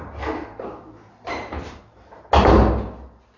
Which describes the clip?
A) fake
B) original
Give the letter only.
B